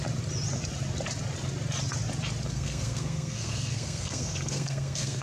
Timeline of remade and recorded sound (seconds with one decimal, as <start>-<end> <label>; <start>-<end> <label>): 0.0-2.5 recorded; 2.5-5.2 remade